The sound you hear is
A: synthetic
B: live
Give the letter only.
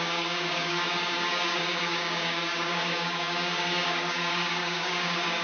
A